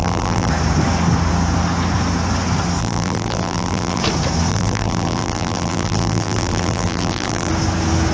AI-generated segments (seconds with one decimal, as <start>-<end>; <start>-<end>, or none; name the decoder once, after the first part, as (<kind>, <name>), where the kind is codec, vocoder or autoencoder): 0.0-0.5 (vocoder, BigVGAN v2); 2.8-4.0; 4.5-7.5

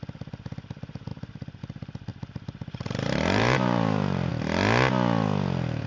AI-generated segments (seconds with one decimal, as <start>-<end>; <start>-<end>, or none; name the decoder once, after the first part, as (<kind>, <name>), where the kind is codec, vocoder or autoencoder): 1.1-1.6 (vocoder, BigVGAN v2); 2.1-4.3

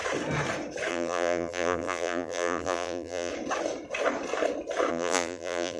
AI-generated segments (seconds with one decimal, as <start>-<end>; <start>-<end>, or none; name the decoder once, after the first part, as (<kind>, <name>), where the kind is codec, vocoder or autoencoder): 0.9-3.3 (vocoder, BigVGAN v2); 4.9-5.8

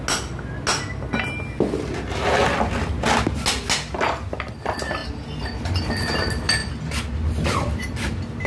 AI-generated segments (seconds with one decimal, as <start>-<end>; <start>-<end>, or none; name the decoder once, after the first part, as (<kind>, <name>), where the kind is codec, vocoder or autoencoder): 6.6-8.5 (vocoder, BigVGAN v2)

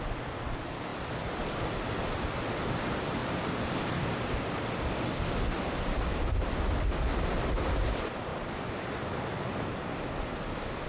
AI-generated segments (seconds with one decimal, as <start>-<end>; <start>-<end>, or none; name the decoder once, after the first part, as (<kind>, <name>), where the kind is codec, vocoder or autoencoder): 0.0-3.2 (vocoder, BigVGAN v2); 6.8-8.3; 9.9-10.9